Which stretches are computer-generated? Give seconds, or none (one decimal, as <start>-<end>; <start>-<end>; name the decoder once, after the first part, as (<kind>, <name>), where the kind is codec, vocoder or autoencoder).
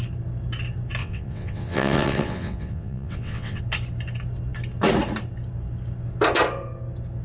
1.0-3.6 (vocoder, WaveNeXt)